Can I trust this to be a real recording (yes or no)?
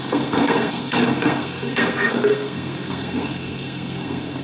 no